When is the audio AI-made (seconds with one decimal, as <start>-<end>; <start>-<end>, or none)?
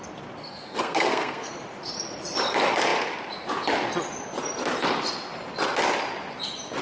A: 0.4-1.5